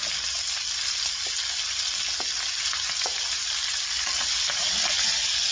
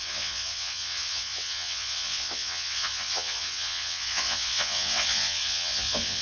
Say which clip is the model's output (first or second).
second